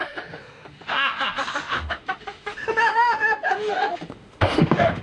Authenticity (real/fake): fake